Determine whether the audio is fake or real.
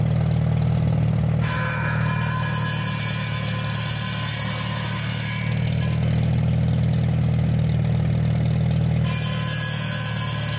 real